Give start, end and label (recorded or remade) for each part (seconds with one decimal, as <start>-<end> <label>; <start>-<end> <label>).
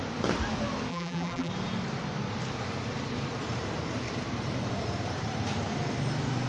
0.0-0.9 recorded; 0.9-1.5 remade; 1.5-6.5 recorded